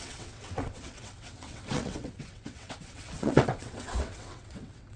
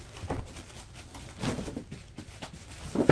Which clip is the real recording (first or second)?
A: second